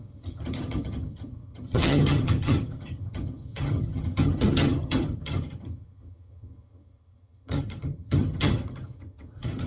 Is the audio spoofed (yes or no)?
yes